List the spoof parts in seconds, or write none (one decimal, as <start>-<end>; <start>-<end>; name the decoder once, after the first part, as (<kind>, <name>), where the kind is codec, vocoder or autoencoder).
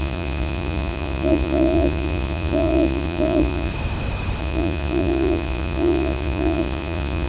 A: 0.0-3.7 (vocoder, Vocos); 4.4-7.3